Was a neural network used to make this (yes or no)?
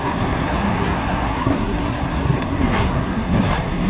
yes